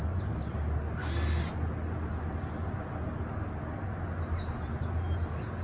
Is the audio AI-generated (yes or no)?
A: no